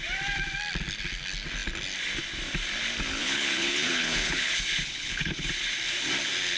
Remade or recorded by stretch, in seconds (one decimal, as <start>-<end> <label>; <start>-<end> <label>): 0.0-3.2 recorded; 3.2-5.5 remade; 5.5-6.6 recorded